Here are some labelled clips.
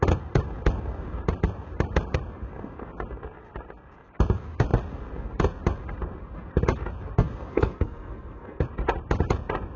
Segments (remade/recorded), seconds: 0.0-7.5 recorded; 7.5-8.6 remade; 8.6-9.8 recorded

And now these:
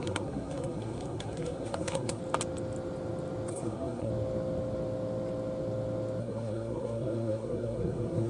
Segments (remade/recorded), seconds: 0.0-2.2 remade; 2.2-3.5 recorded; 3.5-4.1 remade; 4.1-6.2 recorded; 6.2-8.3 remade

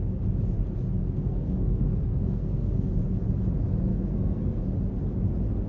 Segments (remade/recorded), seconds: 0.0-1.0 recorded; 1.0-2.9 remade; 2.9-3.9 recorded; 3.9-4.6 remade; 4.6-5.7 recorded

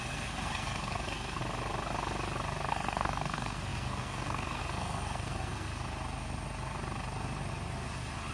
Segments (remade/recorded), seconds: 0.0-1.4 remade; 1.4-2.7 recorded; 2.7-5.7 remade; 5.7-8.3 recorded

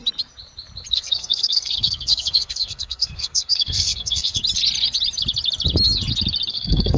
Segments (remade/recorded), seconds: 0.0-0.9 recorded; 0.9-4.4 remade; 4.4-6.5 recorded; 6.5-7.0 remade